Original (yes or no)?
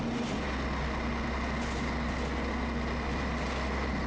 yes